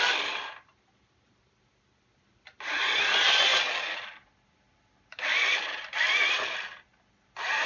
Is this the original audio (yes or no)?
no